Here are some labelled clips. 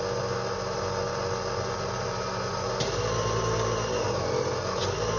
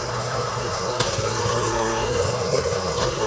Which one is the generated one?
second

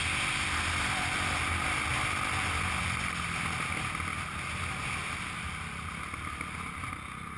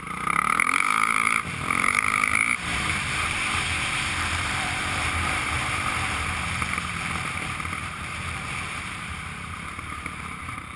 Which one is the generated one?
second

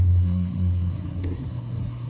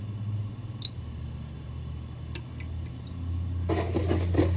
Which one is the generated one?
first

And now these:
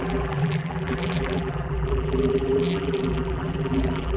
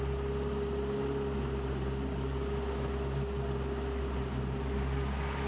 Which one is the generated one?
first